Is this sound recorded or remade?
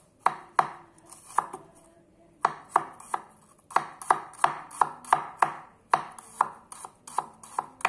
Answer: recorded